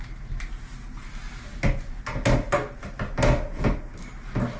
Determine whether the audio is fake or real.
real